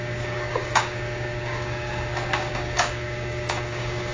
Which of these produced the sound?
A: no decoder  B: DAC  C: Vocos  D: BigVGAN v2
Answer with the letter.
B